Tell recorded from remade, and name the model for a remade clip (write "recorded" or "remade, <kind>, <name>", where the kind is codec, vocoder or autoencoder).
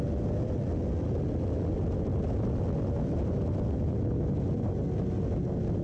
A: recorded